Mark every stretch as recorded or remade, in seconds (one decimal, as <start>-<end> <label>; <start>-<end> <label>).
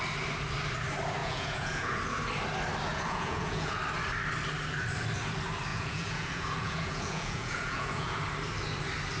0.0-1.2 recorded; 1.2-2.0 remade; 2.0-2.9 recorded; 2.9-3.8 remade; 3.8-5.7 recorded; 5.7-8.2 remade; 8.2-9.2 recorded